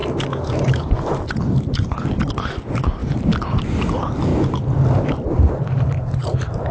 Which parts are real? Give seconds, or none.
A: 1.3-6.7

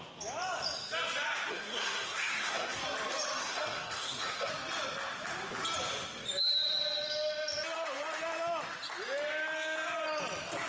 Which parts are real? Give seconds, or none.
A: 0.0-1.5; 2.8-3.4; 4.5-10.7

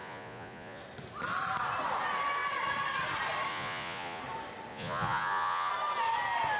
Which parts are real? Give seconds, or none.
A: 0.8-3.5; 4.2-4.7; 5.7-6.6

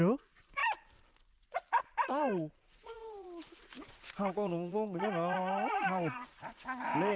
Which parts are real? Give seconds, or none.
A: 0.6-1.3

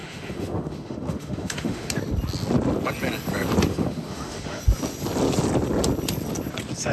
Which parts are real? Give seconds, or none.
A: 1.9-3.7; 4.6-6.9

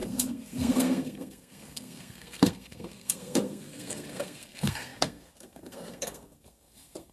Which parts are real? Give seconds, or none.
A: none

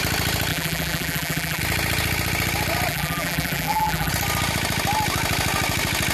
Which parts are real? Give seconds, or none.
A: 0.0-0.5; 1.6-2.9; 4.1-6.1